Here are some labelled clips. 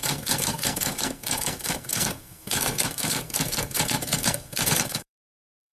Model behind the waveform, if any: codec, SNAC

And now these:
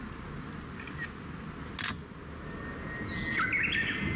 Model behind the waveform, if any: none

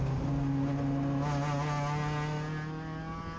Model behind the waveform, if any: none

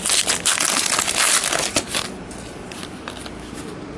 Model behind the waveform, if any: none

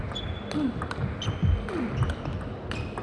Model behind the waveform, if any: none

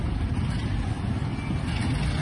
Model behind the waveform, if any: none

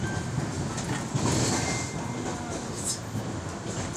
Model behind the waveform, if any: none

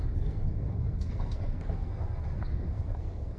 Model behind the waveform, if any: codec, SNAC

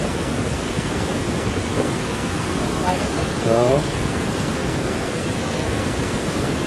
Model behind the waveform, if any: codec, SNAC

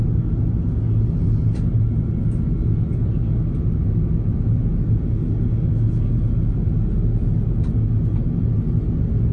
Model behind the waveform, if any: none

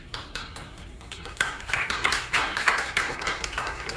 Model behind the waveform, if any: codec, SNAC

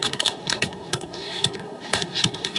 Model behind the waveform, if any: codec, SNAC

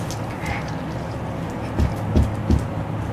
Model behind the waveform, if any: none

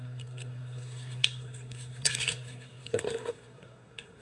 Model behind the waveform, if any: codec, SNAC